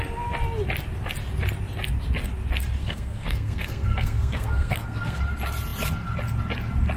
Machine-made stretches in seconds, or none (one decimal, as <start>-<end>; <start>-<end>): 2.8-5.2

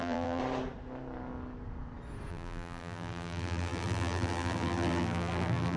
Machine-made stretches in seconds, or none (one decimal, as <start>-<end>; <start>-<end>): 0.0-0.4; 2.3-5.8

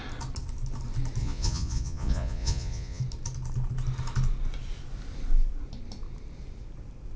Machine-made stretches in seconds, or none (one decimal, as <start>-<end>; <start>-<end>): 1.2-3.0